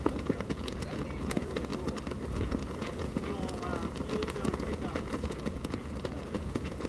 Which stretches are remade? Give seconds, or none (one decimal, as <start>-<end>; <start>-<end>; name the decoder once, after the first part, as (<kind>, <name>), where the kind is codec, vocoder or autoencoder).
0.0-1.7 (vocoder, Vocos); 2.3-3.7; 4.3-6.9